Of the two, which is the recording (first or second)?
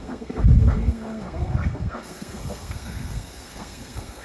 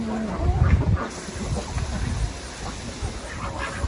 second